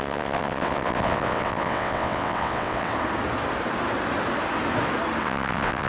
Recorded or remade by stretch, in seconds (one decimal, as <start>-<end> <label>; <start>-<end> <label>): 0.0-2.9 remade; 2.9-5.2 recorded; 5.2-5.9 remade